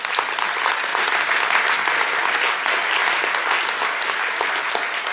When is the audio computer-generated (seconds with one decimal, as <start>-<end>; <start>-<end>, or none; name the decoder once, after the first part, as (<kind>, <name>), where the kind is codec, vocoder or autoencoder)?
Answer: 0.9-1.4 (vocoder, BigVGAN v2)